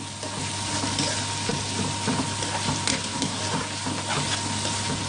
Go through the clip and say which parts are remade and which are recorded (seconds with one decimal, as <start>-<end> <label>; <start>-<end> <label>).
0.0-2.9 recorded; 2.9-3.4 remade; 3.4-5.1 recorded